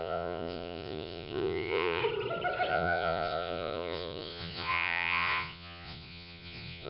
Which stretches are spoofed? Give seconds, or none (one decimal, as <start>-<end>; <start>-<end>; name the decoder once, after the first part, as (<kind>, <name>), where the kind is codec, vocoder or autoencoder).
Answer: 0.0-2.0 (vocoder, Vocos); 2.7-6.9